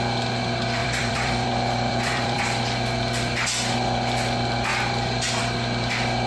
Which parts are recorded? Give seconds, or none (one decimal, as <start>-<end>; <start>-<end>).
0.0-0.8; 2.4-6.3